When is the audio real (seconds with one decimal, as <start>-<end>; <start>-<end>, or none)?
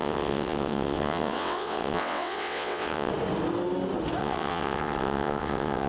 3.1-4.2